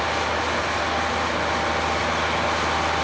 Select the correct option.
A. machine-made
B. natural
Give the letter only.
B